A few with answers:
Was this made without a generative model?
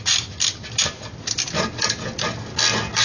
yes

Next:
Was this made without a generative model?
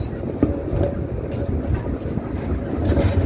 yes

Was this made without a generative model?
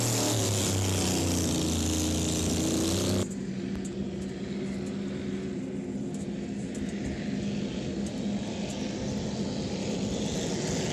yes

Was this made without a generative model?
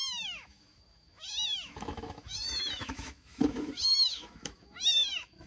no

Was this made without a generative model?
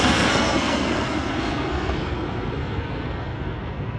no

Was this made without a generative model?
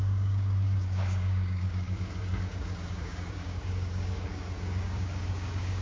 no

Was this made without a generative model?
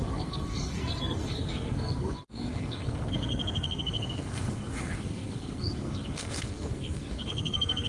no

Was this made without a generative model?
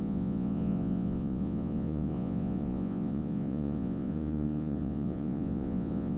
no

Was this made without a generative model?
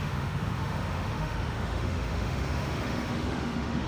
no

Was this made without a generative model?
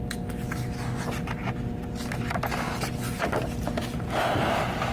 yes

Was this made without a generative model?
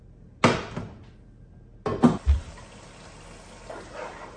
yes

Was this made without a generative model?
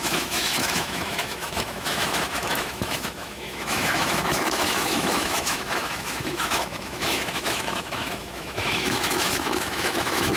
no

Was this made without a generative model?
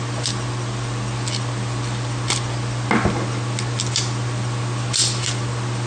yes